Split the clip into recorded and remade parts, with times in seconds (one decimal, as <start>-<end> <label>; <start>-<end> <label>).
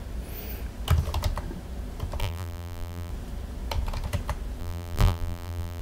0.0-2.2 recorded; 2.2-3.1 remade; 3.1-4.6 recorded; 4.6-5.8 remade